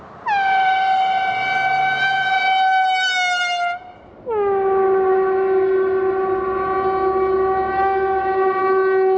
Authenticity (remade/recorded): recorded